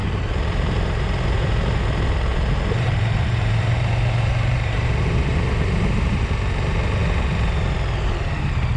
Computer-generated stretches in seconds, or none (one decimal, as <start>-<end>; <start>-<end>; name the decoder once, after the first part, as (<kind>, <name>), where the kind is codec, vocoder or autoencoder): 0.0-1.8 (vocoder, BigVGAN v2); 2.3-6.2